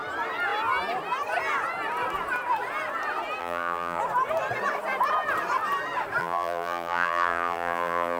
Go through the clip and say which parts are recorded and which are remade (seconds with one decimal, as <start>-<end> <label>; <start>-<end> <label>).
0.0-3.4 recorded; 3.4-4.0 remade; 4.0-6.2 recorded; 6.2-8.2 remade